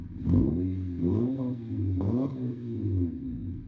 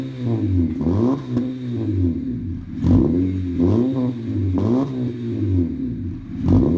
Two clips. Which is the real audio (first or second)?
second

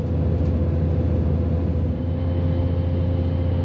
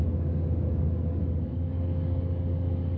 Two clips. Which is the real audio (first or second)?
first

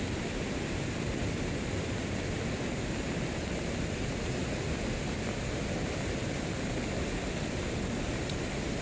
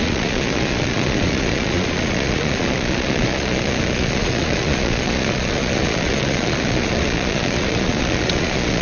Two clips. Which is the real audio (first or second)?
first